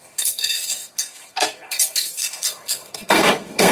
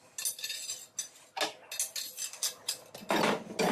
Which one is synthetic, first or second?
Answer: first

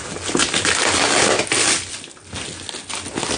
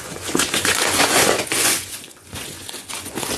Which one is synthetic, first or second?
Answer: second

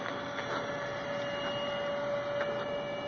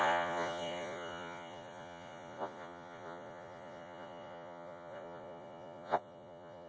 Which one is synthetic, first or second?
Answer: second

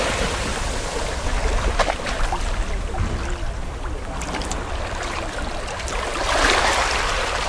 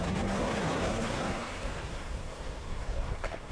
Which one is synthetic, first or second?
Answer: second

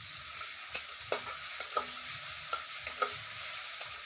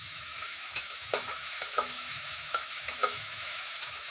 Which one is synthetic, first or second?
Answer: second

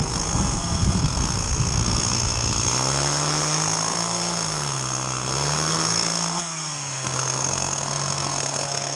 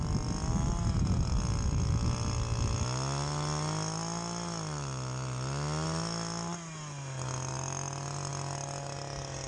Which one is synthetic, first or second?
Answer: first